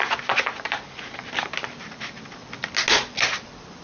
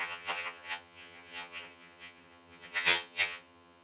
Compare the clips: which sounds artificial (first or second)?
second